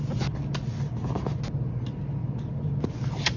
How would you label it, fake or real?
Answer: real